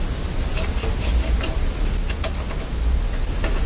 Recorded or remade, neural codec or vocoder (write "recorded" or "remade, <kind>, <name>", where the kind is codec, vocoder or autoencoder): recorded